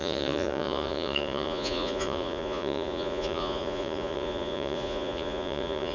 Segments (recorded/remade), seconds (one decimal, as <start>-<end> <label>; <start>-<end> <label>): 0.0-5.9 remade